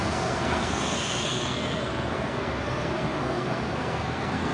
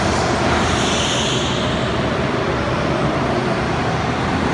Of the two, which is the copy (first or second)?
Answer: first